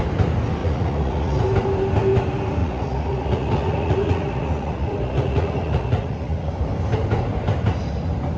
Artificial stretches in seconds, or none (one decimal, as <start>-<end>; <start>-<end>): 0.6-1.4; 2.6-6.5